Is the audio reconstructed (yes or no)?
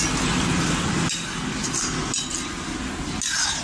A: no